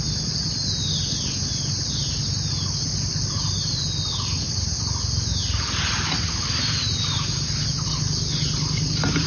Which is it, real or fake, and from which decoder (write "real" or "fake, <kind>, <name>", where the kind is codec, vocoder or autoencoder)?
real